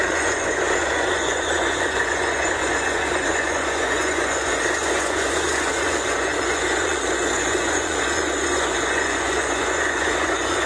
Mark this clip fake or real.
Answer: fake